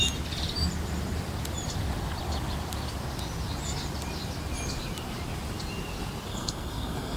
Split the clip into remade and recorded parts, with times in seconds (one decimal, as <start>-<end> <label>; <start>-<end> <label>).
0.0-6.3 recorded; 6.3-7.2 remade